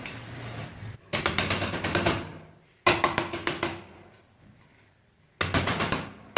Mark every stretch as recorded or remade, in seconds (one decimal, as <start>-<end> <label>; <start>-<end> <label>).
0.0-6.4 recorded